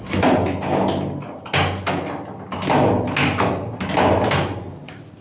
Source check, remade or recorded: recorded